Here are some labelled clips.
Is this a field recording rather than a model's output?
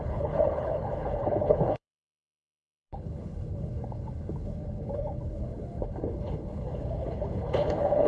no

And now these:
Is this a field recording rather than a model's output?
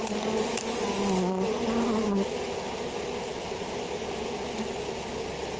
yes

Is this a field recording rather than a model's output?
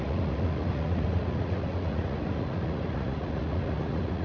no